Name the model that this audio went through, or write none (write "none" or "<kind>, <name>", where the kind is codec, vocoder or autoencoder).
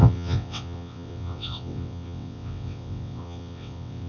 vocoder, WaveNeXt